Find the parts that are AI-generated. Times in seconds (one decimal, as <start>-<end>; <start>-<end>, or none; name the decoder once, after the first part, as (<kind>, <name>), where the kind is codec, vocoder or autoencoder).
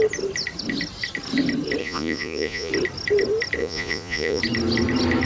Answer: 1.8-2.7 (vocoder, Vocos); 3.6-4.4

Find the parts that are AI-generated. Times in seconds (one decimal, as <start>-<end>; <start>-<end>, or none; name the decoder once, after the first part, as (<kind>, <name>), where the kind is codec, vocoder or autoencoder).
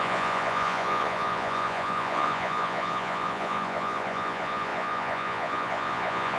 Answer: 0.0-6.4 (vocoder, Vocos)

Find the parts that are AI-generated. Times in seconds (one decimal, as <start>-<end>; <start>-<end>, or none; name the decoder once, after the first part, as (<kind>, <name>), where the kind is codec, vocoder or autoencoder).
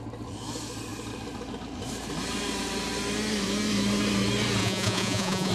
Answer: 4.6-5.5 (vocoder, Vocos)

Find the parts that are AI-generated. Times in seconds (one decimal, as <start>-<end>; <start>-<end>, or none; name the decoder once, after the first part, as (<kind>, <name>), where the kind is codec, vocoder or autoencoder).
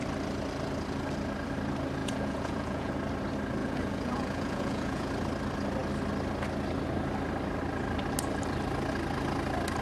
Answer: 2.0-2.9 (vocoder, Vocos); 3.6-5.1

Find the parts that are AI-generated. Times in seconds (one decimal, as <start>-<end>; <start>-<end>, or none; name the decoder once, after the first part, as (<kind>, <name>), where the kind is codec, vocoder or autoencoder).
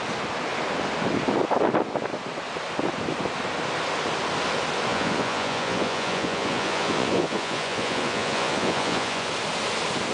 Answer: 4.9-9.3 (vocoder, Vocos)